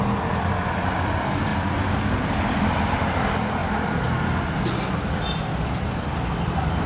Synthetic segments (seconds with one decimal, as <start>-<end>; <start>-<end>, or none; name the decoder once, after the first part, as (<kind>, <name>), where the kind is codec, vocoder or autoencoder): 0.0-1.5 (vocoder, BigVGAN v2); 2.3-3.6; 5.4-6.9